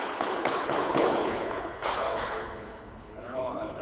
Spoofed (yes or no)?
yes